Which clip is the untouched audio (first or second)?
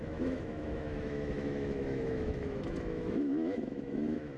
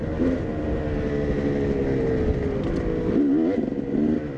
second